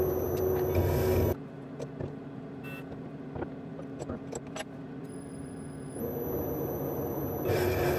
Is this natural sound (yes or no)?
yes